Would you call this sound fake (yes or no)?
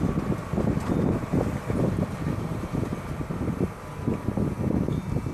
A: no